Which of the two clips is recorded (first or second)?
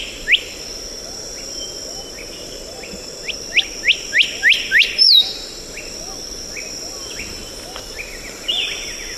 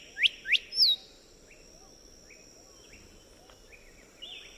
second